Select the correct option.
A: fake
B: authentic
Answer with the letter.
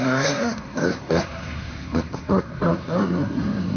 A